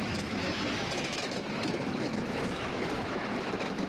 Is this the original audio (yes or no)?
no